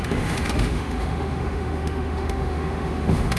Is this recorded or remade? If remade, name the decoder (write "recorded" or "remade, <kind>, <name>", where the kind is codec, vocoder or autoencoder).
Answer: remade, autoencoder, DAC-VAE